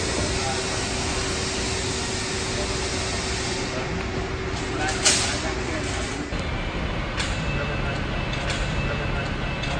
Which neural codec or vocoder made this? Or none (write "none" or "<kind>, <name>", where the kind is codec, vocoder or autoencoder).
none